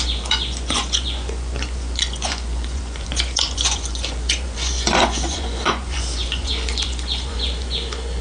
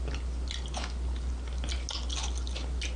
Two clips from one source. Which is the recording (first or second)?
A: second